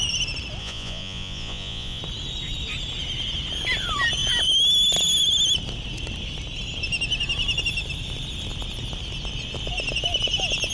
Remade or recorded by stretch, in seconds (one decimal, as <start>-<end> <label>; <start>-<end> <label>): 0.0-0.6 recorded; 0.6-2.0 remade; 2.0-10.7 recorded